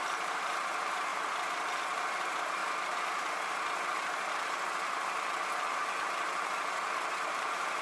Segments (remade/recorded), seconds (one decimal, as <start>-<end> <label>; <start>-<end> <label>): 0.0-1.1 remade; 1.1-2.2 recorded; 2.2-2.6 remade; 2.6-7.1 recorded; 7.1-7.8 remade